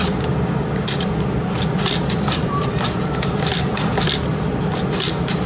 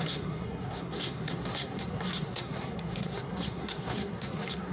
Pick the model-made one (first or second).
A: second